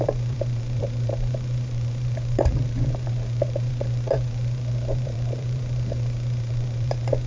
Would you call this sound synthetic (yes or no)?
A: yes